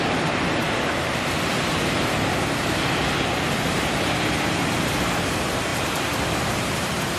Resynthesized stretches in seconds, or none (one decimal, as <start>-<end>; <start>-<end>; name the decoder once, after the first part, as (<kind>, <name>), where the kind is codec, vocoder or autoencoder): 0.0-7.2 (vocoder, BigVGAN v2)